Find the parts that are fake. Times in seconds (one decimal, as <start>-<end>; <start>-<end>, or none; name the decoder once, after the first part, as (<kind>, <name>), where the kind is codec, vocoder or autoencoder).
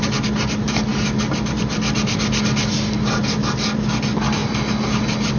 none